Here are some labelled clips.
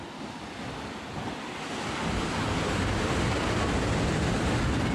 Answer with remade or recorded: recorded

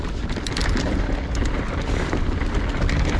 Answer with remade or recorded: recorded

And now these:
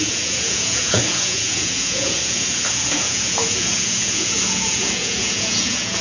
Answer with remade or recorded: remade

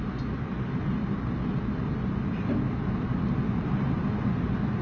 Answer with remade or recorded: recorded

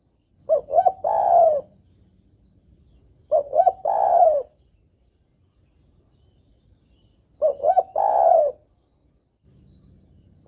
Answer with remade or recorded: recorded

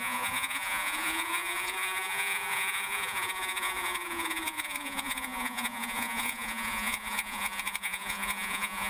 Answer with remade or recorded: remade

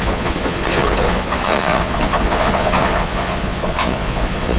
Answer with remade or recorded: remade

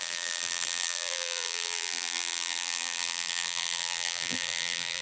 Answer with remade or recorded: remade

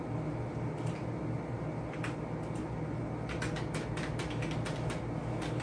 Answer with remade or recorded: recorded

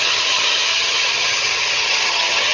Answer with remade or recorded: remade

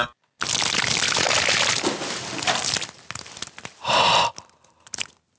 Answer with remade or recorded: recorded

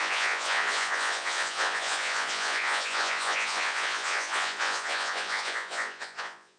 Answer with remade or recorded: remade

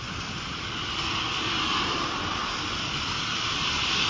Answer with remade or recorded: recorded